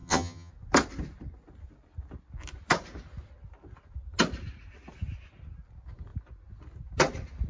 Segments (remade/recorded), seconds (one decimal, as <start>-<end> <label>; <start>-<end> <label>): 0.0-0.5 remade; 0.5-7.5 recorded